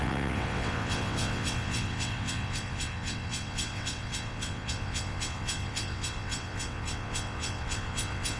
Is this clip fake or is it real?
fake